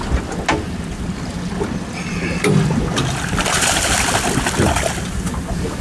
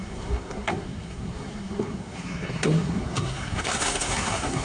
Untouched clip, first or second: first